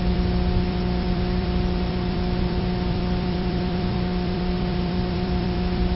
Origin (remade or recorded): remade